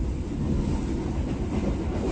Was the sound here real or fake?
real